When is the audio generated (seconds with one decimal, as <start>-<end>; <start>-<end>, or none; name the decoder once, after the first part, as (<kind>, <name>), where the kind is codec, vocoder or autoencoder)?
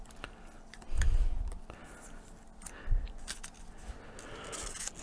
none